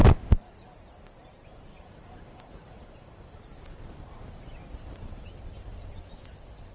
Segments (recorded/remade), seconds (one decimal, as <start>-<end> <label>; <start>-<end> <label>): 0.0-1.7 recorded; 1.7-3.4 remade; 3.4-6.7 recorded